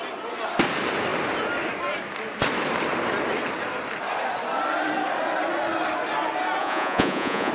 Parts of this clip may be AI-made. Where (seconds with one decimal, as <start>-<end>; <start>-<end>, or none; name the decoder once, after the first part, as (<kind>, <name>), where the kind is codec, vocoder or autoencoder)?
6.6-7.5 (vocoder, Vocos)